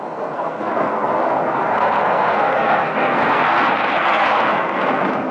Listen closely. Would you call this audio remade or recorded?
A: remade